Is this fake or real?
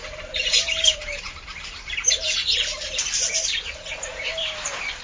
fake